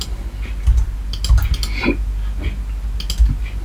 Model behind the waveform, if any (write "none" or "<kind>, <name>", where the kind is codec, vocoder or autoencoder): none